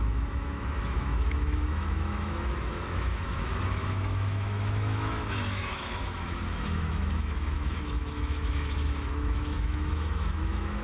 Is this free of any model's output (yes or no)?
no